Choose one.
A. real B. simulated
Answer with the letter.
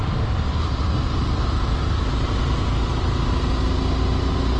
A